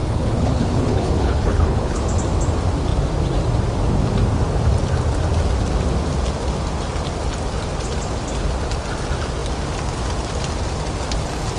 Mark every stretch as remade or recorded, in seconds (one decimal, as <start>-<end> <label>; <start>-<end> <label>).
0.0-2.0 remade; 2.0-11.6 recorded